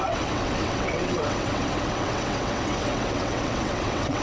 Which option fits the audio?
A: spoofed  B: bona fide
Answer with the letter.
A